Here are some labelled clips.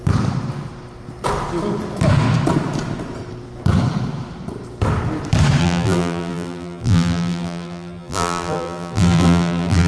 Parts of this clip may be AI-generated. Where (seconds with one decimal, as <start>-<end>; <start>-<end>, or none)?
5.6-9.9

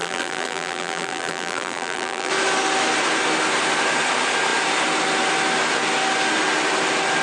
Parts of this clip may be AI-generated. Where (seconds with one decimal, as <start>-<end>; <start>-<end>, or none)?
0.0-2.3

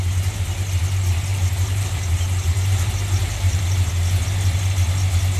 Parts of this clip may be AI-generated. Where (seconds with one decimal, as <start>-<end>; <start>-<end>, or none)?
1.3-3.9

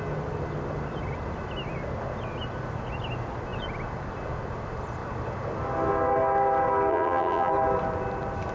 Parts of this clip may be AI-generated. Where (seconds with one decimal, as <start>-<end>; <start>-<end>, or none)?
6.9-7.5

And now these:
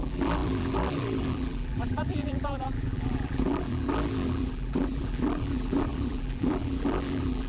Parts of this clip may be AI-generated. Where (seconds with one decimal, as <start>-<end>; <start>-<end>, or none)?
0.0-7.5

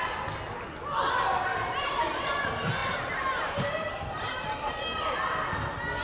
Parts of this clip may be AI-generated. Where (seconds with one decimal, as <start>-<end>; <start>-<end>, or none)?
1.5-2.3; 2.8-4.7

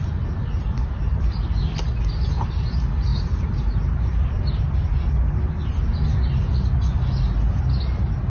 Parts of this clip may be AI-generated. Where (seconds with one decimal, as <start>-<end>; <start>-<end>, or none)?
3.1-4.6